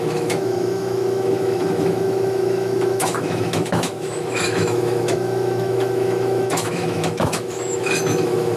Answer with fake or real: fake